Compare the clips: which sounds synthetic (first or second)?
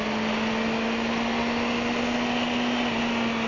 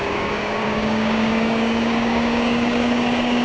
second